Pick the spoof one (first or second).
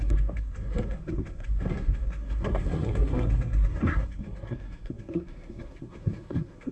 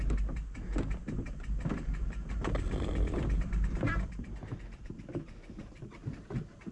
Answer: first